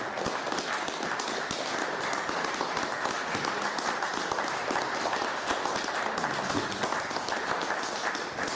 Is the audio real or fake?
real